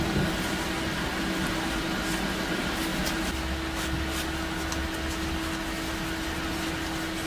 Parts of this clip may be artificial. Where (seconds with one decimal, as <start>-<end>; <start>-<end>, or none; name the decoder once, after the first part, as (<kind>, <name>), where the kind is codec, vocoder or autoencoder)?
none